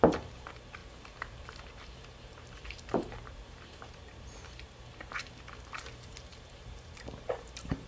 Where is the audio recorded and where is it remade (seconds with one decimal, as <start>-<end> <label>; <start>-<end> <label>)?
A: 0.0-7.9 remade